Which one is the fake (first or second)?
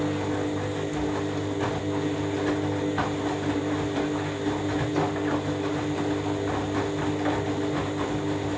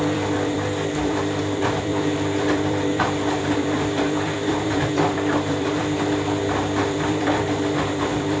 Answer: second